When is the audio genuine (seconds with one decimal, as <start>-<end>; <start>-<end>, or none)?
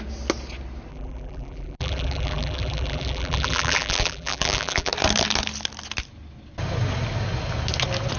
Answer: 0.0-0.9; 4.9-8.2